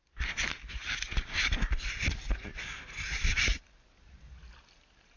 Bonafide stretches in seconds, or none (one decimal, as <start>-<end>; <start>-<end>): 0.0-5.2